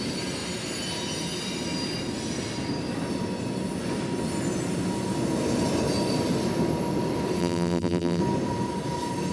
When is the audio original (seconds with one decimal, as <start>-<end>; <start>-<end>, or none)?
0.0-7.4; 8.2-9.3